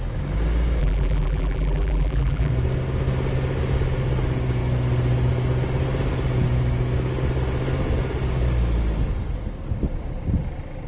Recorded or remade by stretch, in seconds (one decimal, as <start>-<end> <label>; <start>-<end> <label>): 0.0-0.8 recorded; 0.8-2.5 remade; 2.5-10.9 recorded

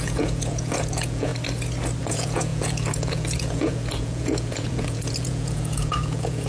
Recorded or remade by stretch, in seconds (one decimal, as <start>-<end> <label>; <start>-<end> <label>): 0.0-1.3 remade; 1.3-2.0 recorded; 2.0-6.5 remade

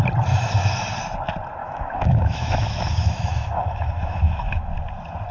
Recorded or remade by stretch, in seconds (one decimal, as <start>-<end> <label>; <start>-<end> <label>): 0.0-1.6 recorded; 1.6-4.7 remade; 4.7-5.3 recorded

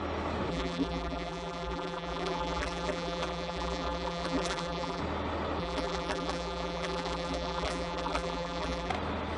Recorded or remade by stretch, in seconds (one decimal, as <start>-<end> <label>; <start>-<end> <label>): 0.0-0.5 recorded; 0.5-5.0 remade; 5.0-5.6 recorded; 5.6-8.9 remade; 8.9-9.4 recorded